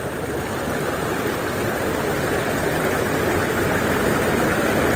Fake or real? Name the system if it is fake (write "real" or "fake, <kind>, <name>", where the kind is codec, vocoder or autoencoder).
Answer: real